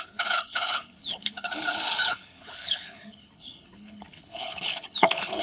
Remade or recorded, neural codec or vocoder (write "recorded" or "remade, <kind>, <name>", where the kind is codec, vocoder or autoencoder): remade, codec, HILCodec